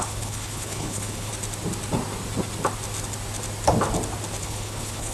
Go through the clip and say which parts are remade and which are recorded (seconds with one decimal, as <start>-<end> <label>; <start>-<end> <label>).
0.0-1.3 remade; 1.3-4.4 recorded; 4.4-5.1 remade